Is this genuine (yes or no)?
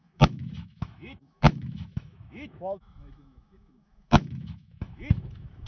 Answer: no